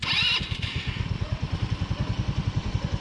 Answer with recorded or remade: recorded